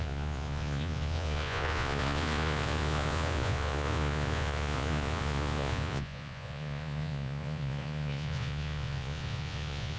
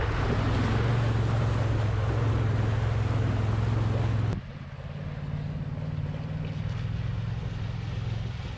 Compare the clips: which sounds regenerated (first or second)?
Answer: first